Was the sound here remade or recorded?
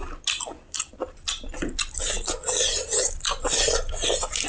recorded